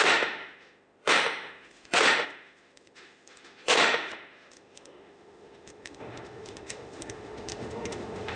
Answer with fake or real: fake